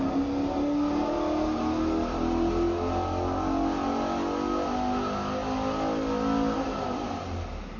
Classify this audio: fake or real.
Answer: real